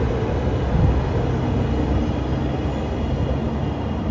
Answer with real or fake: real